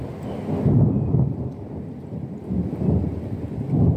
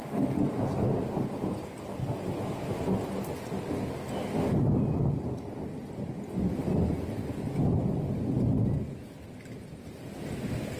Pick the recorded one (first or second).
second